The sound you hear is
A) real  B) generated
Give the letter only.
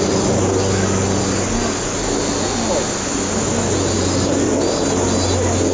A